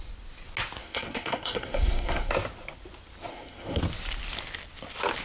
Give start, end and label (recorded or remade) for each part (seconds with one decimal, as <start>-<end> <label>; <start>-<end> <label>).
0.0-0.8 recorded; 0.8-2.3 remade; 2.3-3.3 recorded; 3.3-3.8 remade; 3.8-5.2 recorded